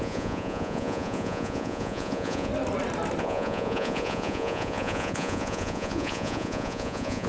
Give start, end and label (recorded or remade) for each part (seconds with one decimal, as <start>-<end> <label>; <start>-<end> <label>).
0.0-2.5 remade; 2.5-3.2 recorded; 3.2-7.3 remade